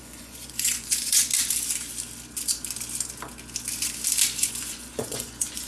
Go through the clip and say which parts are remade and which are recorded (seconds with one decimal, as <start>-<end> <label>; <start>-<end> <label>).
0.0-1.2 remade; 1.2-4.4 recorded; 4.4-5.7 remade